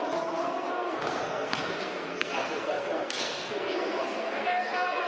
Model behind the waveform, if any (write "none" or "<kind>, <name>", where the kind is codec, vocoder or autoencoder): codec, SNAC